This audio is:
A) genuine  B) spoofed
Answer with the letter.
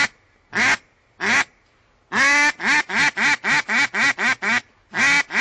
A